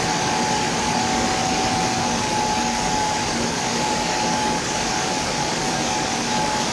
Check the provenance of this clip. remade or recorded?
remade